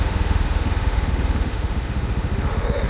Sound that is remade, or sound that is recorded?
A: remade